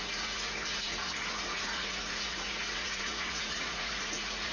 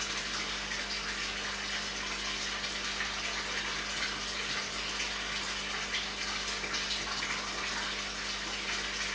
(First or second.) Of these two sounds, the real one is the second